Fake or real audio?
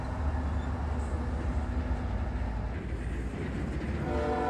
real